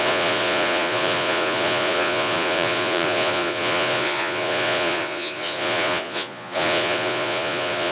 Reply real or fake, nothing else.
fake